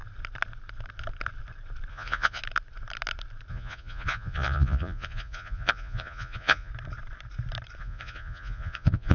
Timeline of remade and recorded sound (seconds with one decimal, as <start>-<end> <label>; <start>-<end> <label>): 0.0-1.9 recorded; 1.9-2.4 remade; 2.4-3.5 recorded; 3.5-6.7 remade; 6.7-7.8 recorded; 7.8-9.1 remade